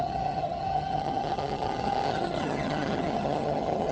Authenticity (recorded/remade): remade